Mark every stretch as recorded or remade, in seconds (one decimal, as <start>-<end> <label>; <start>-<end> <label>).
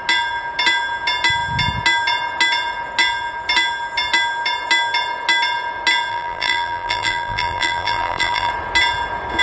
0.0-6.1 recorded; 6.1-8.5 remade; 8.5-9.4 recorded